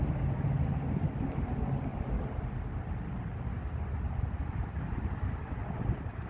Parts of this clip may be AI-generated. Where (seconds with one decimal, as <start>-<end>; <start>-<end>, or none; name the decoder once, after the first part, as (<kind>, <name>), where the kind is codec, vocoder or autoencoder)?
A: none